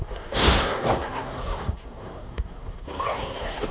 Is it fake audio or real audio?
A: fake